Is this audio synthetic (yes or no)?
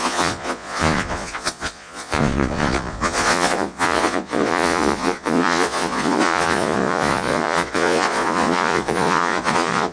yes